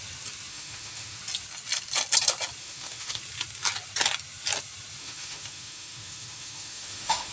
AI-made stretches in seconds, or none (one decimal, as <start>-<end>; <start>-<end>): 0.5-1.2; 2.6-3.2; 5.0-7.3